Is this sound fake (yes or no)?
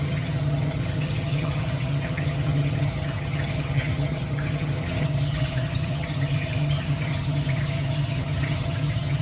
yes